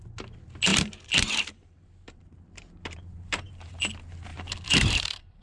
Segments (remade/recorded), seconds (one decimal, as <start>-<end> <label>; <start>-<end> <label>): 0.0-0.7 recorded; 0.7-3.7 remade; 3.7-4.3 recorded; 4.3-5.4 remade